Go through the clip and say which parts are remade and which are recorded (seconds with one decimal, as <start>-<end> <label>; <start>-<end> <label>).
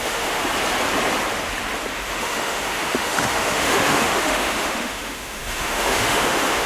0.0-0.4 remade; 0.4-1.9 recorded; 1.9-6.7 remade